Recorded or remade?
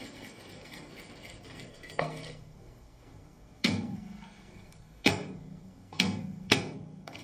remade